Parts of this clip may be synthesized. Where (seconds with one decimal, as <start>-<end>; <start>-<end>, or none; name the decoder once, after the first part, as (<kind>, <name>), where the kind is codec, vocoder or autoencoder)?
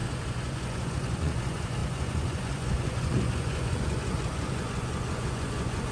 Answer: 0.0-5.9 (vocoder, Vocos)